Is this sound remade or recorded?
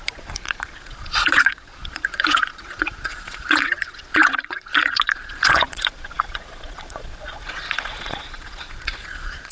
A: remade